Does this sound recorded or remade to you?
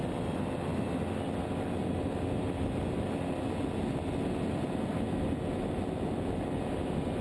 recorded